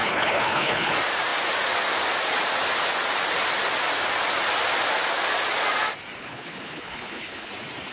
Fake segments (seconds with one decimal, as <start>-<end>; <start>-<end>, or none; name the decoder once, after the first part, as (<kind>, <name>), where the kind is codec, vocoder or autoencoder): 0.0-0.9 (codec, HILCodec); 6.2-7.5